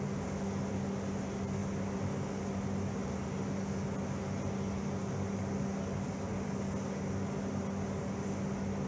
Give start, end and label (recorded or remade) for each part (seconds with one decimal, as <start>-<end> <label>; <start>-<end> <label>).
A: 0.0-5.0 recorded; 5.0-5.5 remade; 5.5-8.9 recorded